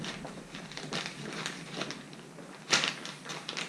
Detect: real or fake real